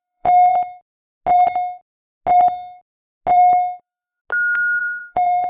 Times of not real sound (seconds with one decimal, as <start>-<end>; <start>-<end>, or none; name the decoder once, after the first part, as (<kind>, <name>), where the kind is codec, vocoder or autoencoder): 0.0-0.5 (vocoder, BigVGAN v2); 3.8-4.2; 4.8-5.5